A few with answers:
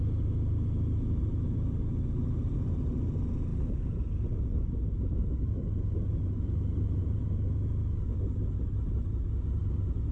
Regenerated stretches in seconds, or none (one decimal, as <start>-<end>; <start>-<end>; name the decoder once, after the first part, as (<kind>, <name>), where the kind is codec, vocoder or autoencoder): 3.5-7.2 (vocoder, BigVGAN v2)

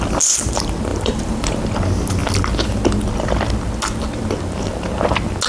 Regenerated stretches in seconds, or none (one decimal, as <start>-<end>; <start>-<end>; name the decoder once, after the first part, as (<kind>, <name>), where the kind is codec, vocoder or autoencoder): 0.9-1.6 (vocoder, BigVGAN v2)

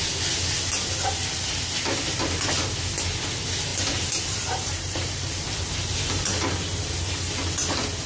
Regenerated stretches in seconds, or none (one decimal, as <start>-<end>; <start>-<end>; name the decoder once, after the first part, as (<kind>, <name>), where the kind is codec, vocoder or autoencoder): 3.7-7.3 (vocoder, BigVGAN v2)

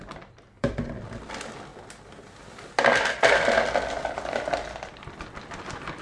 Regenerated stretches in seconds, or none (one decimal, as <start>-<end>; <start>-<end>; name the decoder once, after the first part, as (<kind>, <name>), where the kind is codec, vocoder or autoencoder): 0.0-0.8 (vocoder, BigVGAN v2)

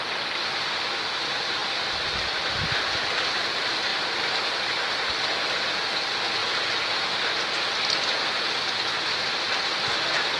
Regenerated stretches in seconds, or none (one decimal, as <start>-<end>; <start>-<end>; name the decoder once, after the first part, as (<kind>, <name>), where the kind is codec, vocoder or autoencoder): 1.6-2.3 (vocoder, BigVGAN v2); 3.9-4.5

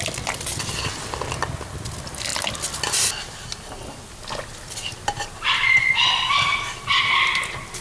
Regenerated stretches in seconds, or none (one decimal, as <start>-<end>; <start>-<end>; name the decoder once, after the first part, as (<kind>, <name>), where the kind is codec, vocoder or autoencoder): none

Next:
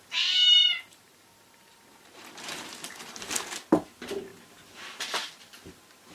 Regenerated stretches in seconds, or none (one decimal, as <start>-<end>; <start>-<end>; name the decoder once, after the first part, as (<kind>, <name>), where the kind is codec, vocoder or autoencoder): 0.6-3.3 (vocoder, BigVGAN v2)